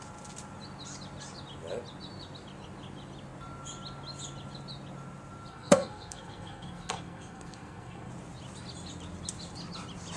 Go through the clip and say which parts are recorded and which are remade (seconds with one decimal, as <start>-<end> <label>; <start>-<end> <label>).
0.0-5.5 recorded; 5.5-8.1 remade; 8.1-10.2 recorded